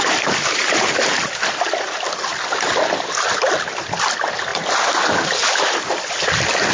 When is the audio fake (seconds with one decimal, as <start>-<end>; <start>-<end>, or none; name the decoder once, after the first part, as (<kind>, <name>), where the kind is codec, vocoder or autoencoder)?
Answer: none